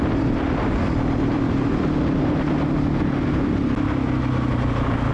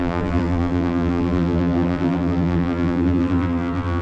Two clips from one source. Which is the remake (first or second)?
second